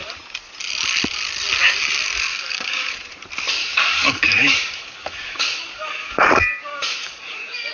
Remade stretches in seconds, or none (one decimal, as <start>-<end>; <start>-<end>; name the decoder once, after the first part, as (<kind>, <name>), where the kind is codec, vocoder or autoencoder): 2.3-2.9 (codec, DAC); 3.6-7.7